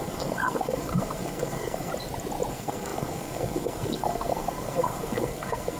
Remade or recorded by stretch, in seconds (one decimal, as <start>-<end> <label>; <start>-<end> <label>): 0.0-1.9 remade; 1.9-2.5 recorded; 2.5-5.8 remade